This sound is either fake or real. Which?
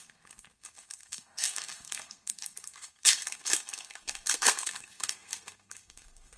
fake